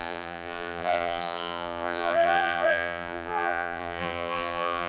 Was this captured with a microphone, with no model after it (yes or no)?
no